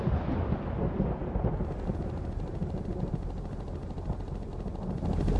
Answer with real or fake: real